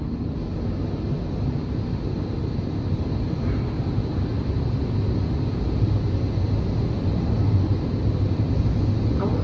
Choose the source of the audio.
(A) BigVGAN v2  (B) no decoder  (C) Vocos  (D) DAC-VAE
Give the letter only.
B